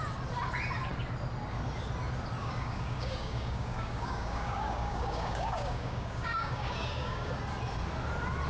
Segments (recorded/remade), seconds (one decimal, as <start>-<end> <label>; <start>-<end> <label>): 0.0-2.4 recorded; 2.4-7.3 remade; 7.3-8.5 recorded